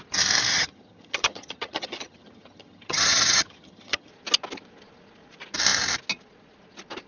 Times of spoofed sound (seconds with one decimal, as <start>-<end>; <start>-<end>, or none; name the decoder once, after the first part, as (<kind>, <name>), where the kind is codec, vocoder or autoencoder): 0.5-4.1 (vocoder, HiFi-GAN)